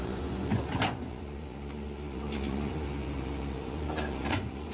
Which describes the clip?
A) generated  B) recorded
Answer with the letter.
A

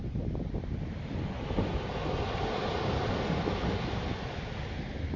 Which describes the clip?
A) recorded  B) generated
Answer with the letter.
A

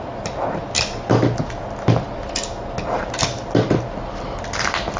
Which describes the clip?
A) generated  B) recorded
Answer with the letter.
B